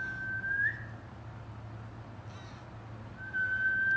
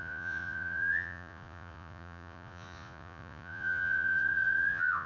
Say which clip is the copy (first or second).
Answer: second